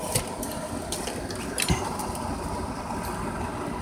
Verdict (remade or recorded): recorded